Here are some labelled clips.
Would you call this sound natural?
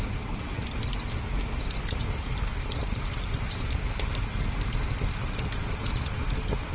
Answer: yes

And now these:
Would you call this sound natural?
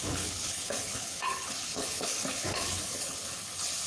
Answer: no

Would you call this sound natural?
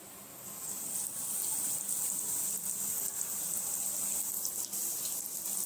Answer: yes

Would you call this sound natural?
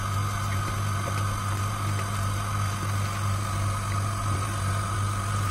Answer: yes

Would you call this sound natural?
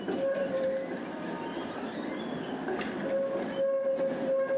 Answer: yes